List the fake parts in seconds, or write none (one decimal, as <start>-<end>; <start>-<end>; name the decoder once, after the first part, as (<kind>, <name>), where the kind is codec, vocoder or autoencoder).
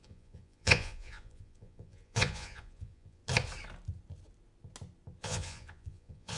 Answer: 0.0-3.2 (vocoder, Vocos); 5.2-6.4